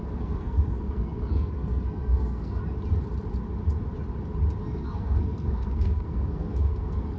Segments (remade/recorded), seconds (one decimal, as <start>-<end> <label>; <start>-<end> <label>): 0.0-2.6 remade; 2.6-4.6 recorded; 4.6-7.2 remade